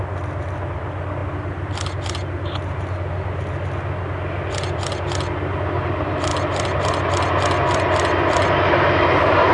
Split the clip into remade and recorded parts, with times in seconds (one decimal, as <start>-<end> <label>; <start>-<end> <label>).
0.0-9.5 recorded